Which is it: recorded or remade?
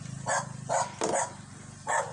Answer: recorded